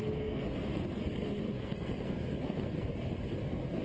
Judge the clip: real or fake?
fake